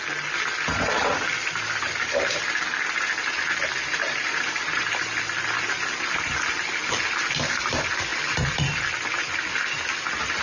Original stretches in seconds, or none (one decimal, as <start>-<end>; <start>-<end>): 0.0-3.8; 4.9-10.4